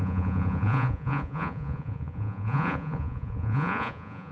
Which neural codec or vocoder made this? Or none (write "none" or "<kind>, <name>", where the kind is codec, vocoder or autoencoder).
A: vocoder, Vocos